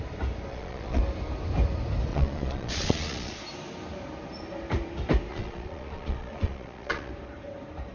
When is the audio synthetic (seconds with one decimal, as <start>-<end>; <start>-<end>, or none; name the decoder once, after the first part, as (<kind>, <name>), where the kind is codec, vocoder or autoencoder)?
0.5-1.0 (vocoder, Vocos); 2.1-3.4; 5.3-7.1